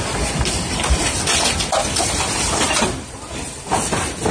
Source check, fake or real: real